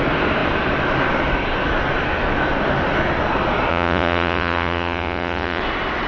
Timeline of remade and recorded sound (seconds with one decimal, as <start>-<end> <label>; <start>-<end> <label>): 0.0-3.7 recorded; 3.7-5.6 remade; 5.6-6.1 recorded